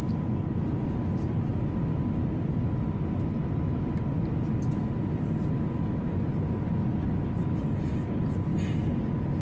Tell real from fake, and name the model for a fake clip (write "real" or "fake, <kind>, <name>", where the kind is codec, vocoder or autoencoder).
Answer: real